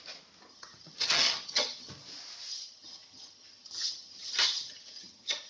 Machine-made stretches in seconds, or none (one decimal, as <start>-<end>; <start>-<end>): 0.5-1.9; 2.5-5.5